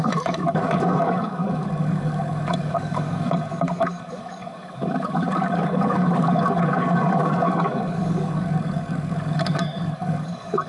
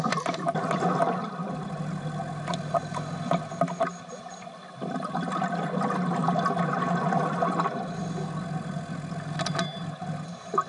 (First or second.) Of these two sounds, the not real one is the first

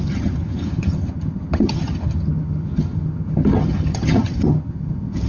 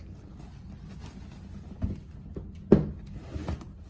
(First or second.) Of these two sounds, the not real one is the first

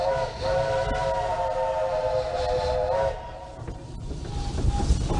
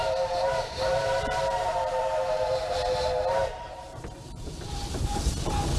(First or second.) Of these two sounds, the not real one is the second